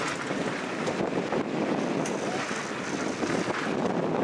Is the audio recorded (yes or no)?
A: yes